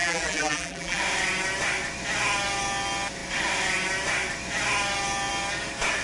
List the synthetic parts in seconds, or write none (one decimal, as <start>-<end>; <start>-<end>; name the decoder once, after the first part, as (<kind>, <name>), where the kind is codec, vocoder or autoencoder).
0.0-1.0 (vocoder, BigVGAN v2)